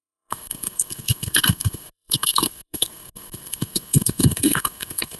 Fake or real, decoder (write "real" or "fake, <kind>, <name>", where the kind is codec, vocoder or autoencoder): fake, codec, SNAC